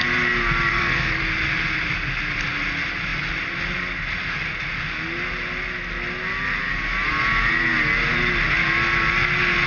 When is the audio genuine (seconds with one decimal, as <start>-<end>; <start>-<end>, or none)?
0.0-0.7; 1.2-9.7